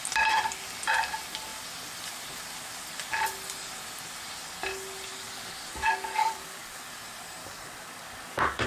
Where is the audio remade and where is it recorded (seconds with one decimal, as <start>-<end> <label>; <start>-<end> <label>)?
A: 0.0-5.1 recorded; 5.1-6.8 remade; 6.8-7.4 recorded; 7.4-8.7 remade